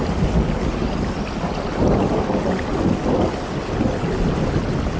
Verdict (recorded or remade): recorded